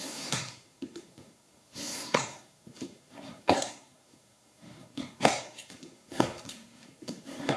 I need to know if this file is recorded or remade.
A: remade